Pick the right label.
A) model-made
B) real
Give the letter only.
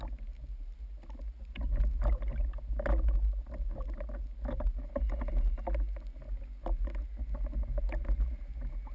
B